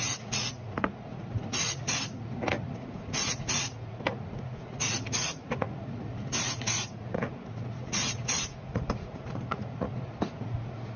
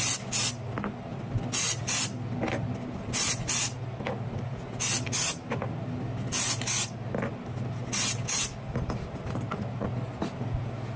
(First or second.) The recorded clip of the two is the second